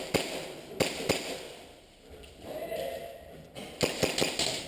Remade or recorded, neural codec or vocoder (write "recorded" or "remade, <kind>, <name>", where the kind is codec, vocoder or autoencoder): recorded